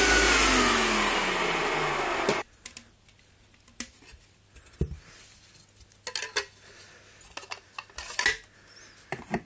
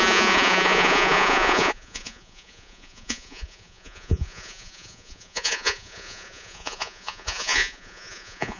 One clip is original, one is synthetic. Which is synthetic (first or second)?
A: second